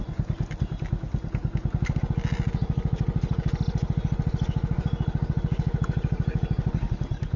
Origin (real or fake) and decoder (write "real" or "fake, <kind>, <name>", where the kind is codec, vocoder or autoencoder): real